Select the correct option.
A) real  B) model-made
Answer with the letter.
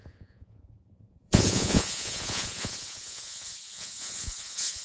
B